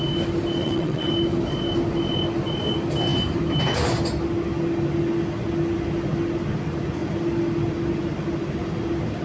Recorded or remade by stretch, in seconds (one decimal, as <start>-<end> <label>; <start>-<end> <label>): 0.0-0.6 recorded; 0.6-1.1 remade; 1.1-9.2 recorded